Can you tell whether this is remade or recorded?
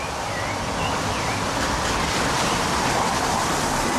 remade